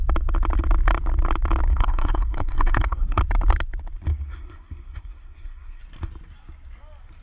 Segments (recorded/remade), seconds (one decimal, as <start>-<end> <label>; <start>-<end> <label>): 0.0-1.7 recorded; 1.7-3.2 remade; 3.2-4.1 recorded; 4.1-5.8 remade; 5.8-7.2 recorded